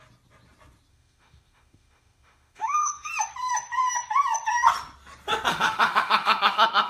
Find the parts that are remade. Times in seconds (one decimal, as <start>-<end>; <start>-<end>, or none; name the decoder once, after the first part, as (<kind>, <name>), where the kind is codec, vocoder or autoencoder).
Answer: 0.9-3.1 (autoencoder, DAC-VAE); 5.5-6.9